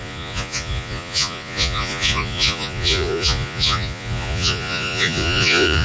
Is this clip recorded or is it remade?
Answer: remade